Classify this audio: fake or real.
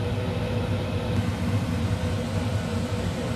real